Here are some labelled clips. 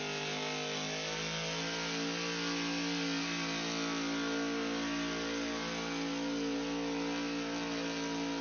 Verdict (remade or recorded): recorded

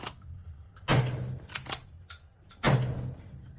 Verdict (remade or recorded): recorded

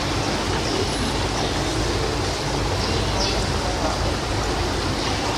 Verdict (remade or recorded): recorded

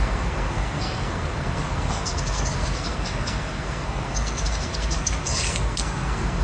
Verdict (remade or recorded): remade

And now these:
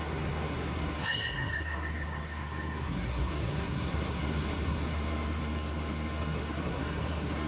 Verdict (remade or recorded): remade